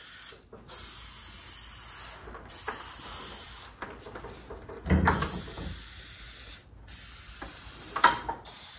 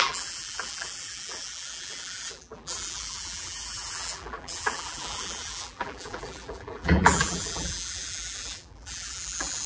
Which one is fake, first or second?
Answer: second